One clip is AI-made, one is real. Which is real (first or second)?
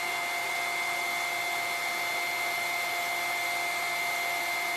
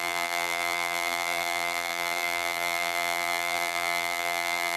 first